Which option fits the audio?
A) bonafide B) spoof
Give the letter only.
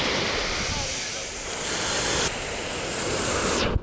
A